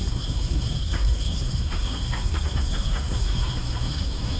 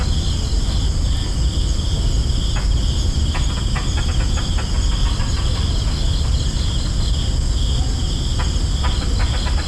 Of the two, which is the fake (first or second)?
first